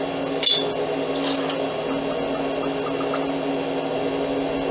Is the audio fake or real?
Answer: real